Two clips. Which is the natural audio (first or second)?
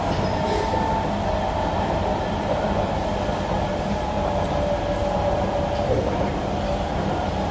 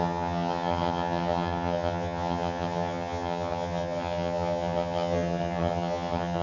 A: first